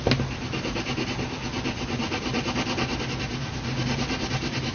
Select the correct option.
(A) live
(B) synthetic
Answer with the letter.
A